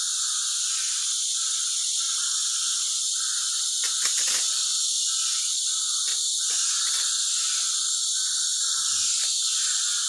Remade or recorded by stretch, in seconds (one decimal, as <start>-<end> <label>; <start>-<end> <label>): 0.0-10.1 recorded

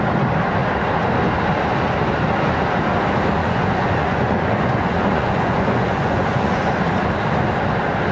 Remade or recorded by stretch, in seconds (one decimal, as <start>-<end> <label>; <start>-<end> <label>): 0.0-3.4 recorded; 3.4-6.7 remade; 6.7-8.1 recorded

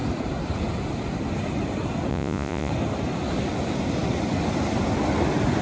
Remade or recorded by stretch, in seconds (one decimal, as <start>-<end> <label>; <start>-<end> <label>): 0.0-2.1 recorded; 2.1-2.7 remade; 2.7-5.6 recorded

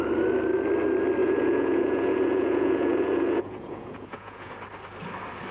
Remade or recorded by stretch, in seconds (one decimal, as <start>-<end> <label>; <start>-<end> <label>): 0.0-1.2 recorded; 1.2-4.5 remade; 4.5-5.5 recorded

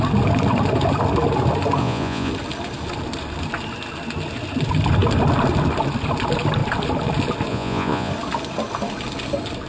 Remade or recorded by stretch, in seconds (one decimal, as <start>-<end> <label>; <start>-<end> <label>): 0.0-1.8 recorded; 1.8-2.3 remade; 2.3-7.5 recorded; 7.5-8.1 remade; 8.1-9.7 recorded

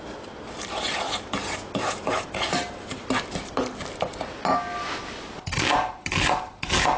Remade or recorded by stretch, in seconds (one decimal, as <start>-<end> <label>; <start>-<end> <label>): 0.0-1.6 recorded; 1.6-2.3 remade; 2.3-7.0 recorded

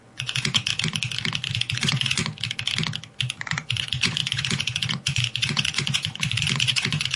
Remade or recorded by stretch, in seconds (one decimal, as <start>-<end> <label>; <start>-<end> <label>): 0.0-0.7 remade; 0.7-1.5 recorded; 1.5-2.2 remade; 2.2-3.2 recorded; 3.2-7.2 remade